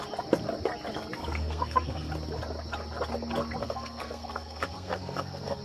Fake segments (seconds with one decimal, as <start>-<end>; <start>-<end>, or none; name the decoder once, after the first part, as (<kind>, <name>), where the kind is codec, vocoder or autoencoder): 1.2-2.1 (codec, SNAC); 3.6-5.6